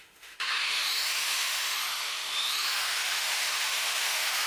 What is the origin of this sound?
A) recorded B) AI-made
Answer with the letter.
B